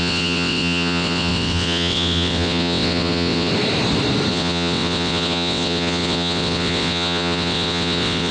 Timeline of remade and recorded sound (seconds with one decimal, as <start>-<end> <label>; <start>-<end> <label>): 0.0-3.5 remade; 3.5-4.3 recorded; 4.3-8.3 remade